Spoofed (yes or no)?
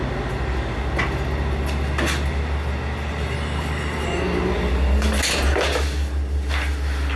no